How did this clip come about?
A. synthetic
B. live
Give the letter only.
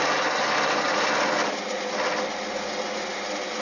B